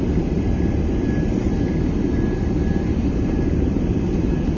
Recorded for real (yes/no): yes